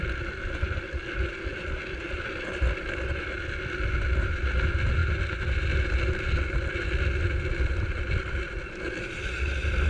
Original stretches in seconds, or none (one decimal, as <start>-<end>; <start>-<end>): 0.0-9.9